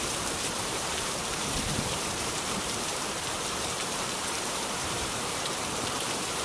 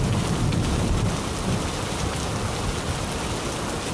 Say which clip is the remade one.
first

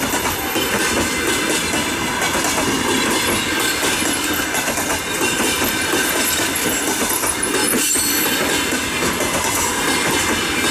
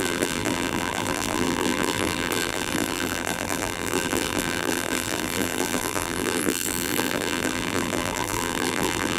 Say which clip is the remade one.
second